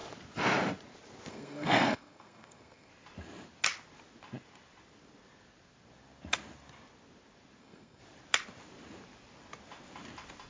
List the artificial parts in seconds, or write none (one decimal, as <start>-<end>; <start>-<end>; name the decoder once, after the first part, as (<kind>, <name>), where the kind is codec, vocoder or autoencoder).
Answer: 1.3-2.9 (codec, SNAC); 7.6-8.0